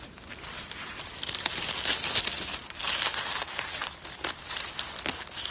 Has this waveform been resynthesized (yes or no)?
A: no